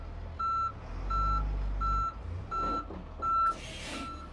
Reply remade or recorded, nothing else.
recorded